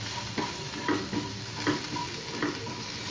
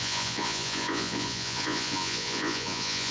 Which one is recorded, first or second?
first